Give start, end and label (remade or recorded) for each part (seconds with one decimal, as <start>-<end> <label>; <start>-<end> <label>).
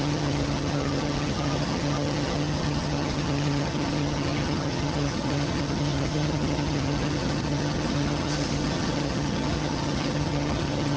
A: 0.0-11.0 remade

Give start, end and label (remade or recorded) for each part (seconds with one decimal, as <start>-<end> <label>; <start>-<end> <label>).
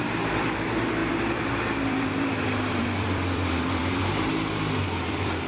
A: 0.0-1.0 recorded; 1.0-4.3 remade; 4.3-4.8 recorded; 4.8-5.5 remade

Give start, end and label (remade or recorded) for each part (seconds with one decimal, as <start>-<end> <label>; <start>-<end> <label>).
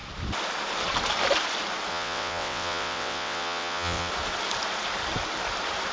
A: 0.0-1.9 recorded; 1.9-4.1 remade; 4.1-5.9 recorded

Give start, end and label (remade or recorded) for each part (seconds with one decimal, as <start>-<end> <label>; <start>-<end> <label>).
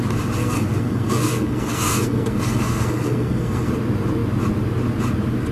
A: 0.0-0.4 recorded; 0.4-3.7 remade; 3.7-5.5 recorded